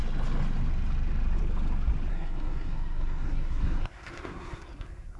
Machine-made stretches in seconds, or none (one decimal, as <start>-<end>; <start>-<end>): 2.1-5.2